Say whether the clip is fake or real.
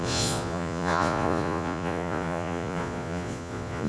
fake